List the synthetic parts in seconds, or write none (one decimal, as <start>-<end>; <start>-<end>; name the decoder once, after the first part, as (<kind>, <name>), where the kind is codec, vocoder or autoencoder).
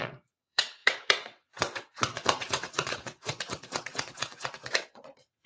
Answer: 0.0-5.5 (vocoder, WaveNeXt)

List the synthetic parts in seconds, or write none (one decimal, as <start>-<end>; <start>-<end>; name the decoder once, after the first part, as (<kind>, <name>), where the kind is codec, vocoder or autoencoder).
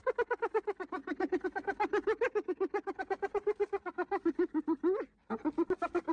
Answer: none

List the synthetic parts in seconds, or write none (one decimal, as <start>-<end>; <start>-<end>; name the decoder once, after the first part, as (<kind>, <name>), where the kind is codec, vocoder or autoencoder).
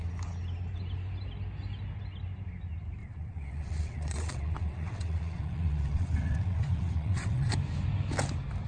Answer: 3.0-7.5 (vocoder, WaveNeXt)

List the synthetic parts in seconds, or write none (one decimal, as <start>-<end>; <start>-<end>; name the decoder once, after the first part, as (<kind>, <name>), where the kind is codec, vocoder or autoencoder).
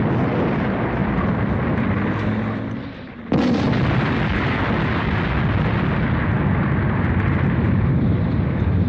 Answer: none